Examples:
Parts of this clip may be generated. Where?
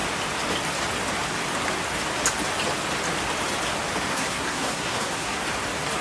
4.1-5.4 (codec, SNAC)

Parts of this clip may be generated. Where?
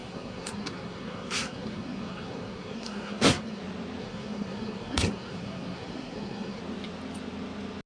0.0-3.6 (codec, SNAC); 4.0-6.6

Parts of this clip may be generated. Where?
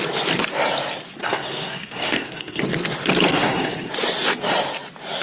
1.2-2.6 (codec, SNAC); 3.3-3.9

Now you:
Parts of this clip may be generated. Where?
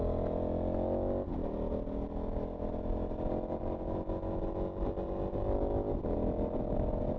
none